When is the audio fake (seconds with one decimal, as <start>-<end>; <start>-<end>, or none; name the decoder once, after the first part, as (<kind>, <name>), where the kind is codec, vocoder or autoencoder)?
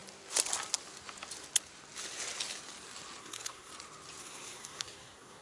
3.2-3.7 (codec, SNAC); 4.2-5.4